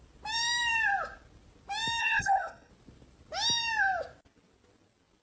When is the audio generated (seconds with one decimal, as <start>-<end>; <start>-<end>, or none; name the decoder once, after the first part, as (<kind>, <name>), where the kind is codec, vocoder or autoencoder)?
2.0-2.7 (codec, HILCodec)